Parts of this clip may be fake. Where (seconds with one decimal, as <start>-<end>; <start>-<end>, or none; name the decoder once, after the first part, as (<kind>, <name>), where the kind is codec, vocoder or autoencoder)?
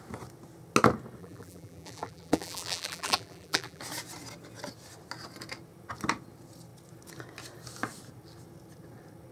1.2-3.8 (vocoder, BigVGAN v2)